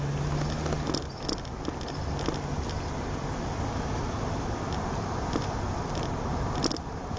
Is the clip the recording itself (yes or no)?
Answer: yes